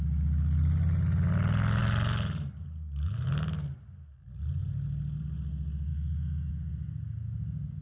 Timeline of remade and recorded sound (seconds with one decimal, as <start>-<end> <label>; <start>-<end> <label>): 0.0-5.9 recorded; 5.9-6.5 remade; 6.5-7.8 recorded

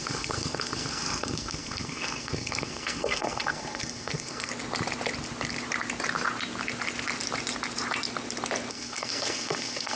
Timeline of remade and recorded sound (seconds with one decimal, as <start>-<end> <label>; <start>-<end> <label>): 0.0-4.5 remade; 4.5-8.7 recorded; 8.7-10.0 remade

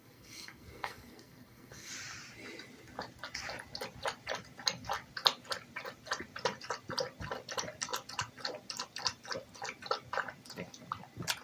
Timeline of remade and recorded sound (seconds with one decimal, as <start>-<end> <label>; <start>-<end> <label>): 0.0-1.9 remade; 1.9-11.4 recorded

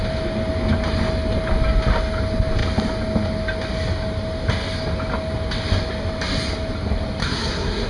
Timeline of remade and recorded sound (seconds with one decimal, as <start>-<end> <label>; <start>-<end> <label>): 0.0-7.2 recorded; 7.2-7.9 remade